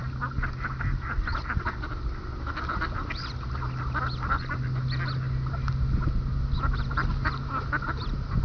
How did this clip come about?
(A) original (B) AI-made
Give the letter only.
A